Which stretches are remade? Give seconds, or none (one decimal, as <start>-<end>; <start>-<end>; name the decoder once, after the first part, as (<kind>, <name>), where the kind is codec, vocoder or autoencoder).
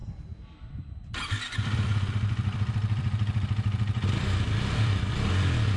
0.7-5.8 (vocoder, BigVGAN v2)